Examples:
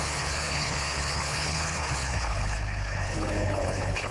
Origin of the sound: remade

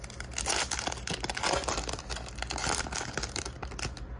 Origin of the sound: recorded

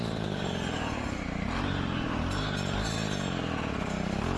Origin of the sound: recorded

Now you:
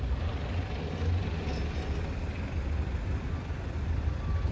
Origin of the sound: recorded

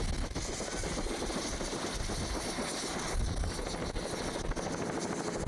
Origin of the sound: recorded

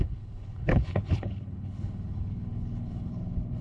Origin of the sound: remade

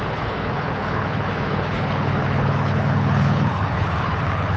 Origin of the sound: remade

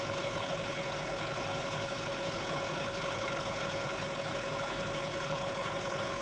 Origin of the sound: remade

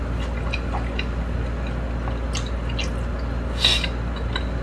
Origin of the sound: recorded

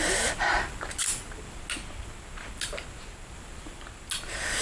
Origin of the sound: recorded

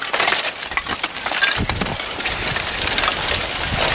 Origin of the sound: recorded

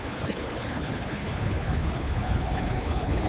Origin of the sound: remade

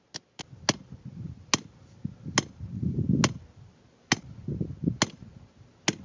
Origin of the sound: recorded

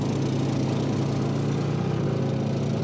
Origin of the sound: recorded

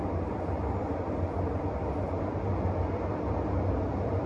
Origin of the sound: recorded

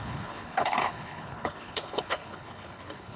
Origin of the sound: remade